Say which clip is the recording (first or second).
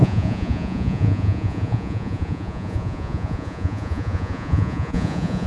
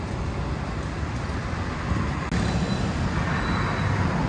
second